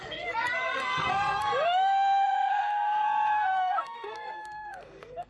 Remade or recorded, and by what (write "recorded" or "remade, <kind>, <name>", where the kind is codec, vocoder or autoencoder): remade, codec, SNAC